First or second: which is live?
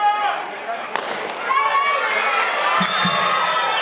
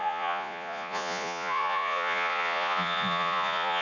first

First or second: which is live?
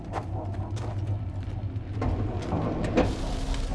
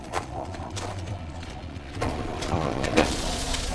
first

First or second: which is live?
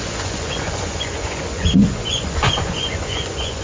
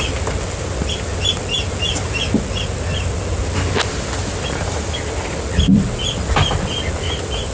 second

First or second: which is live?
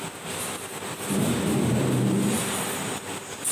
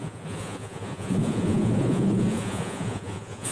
first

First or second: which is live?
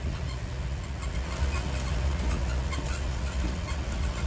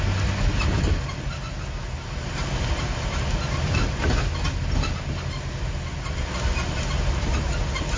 second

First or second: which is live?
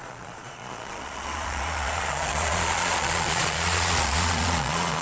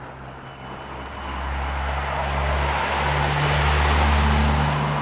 second